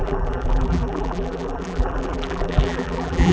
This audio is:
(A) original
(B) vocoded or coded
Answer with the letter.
B